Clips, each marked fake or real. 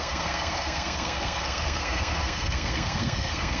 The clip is fake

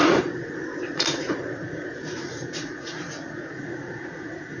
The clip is fake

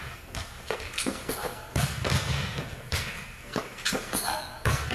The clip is fake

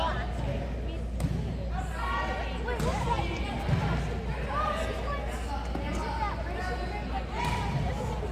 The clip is real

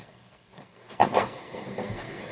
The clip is fake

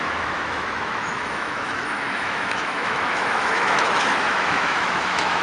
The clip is fake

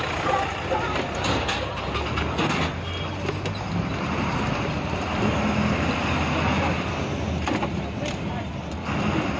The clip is real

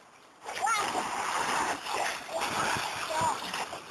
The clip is real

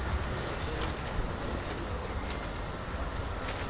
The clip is real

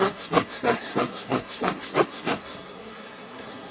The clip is fake